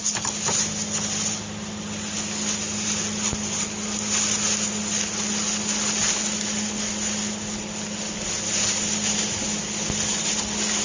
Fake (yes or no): no